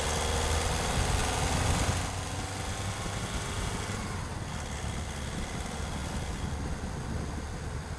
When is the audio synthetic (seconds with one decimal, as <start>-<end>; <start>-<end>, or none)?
none